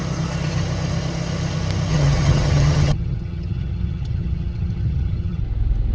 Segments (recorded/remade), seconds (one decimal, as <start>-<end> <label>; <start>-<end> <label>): 0.0-1.9 recorded; 1.9-5.4 remade; 5.4-5.9 recorded